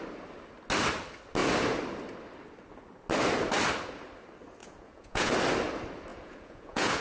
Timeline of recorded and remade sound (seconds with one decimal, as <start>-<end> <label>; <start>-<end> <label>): 0.0-4.6 recorded; 4.6-5.3 remade; 5.3-6.1 recorded; 6.1-7.0 remade